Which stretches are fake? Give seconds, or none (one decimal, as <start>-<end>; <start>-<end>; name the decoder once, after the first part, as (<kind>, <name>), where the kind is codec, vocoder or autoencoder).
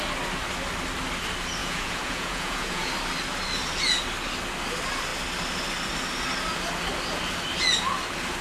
1.6-2.9 (vocoder, Vocos)